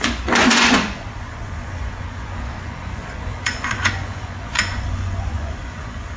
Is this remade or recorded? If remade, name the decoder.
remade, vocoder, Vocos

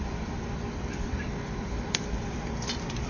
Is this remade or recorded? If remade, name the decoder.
remade, vocoder, BigVGAN v2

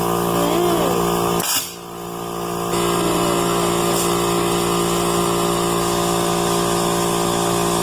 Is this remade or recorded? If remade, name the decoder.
recorded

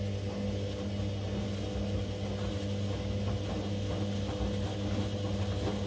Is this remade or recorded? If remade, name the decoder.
recorded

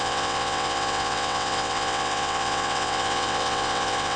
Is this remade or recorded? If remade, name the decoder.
remade, vocoder, WaveNeXt